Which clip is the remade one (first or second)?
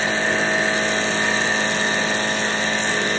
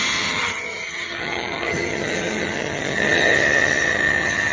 second